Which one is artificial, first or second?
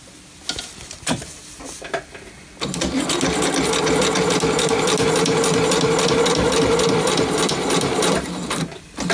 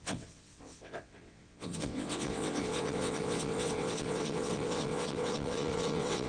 second